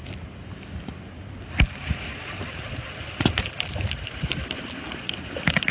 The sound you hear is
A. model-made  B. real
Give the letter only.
B